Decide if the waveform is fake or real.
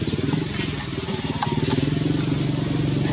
real